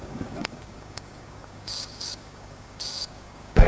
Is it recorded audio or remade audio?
remade